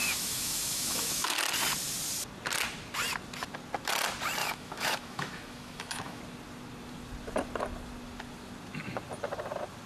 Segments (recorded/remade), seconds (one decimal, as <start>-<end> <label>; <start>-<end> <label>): 0.0-1.4 remade; 1.4-4.4 recorded; 4.4-6.2 remade; 6.2-9.9 recorded